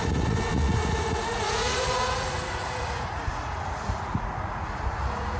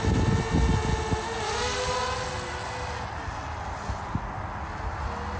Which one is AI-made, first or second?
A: first